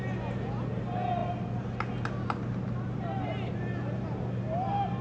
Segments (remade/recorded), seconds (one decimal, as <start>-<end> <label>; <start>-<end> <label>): 0.0-5.0 recorded